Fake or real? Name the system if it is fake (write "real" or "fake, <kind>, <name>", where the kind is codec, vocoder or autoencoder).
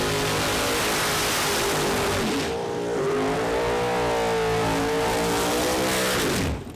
real